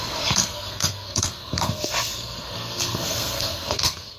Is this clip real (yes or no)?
no